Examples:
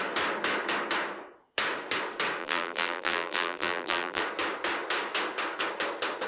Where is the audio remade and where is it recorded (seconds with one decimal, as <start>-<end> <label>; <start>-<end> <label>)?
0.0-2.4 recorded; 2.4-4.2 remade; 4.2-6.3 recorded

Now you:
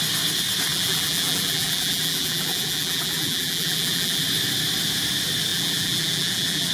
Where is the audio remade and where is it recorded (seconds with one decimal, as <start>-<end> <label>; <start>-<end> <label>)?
0.0-0.7 recorded; 0.7-4.2 remade; 4.2-5.5 recorded; 5.5-6.7 remade

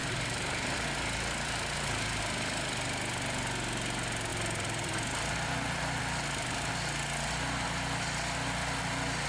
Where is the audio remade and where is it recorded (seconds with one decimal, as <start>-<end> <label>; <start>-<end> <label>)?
0.0-2.2 remade; 2.2-4.3 recorded; 4.3-6.0 remade; 6.0-9.3 recorded